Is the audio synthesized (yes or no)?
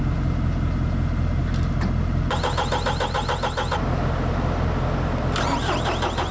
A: no